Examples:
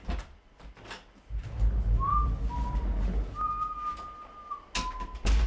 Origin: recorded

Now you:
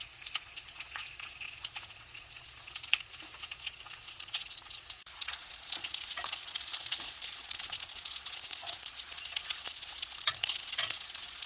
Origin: remade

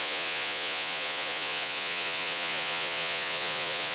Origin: remade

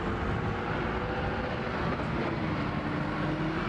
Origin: recorded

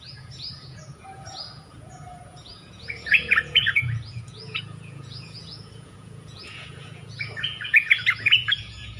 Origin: remade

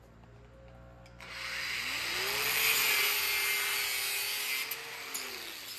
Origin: recorded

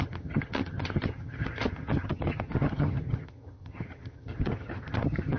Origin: remade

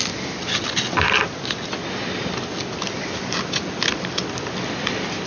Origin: recorded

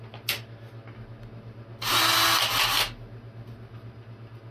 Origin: recorded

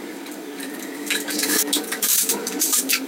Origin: remade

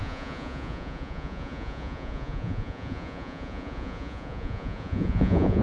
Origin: remade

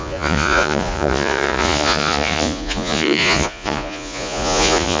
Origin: remade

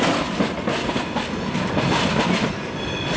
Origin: recorded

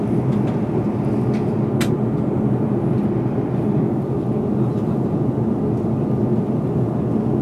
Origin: recorded